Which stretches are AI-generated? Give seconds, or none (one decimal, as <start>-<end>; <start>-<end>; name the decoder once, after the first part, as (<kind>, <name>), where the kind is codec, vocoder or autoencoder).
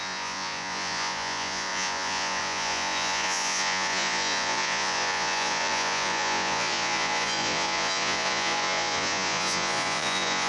0.0-10.5 (vocoder, Vocos)